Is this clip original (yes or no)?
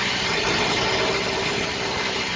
yes